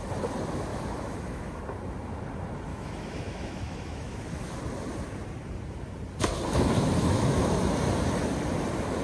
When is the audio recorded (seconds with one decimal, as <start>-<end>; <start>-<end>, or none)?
0.0-0.7; 1.6-2.7; 4.6-7.0; 7.6-9.0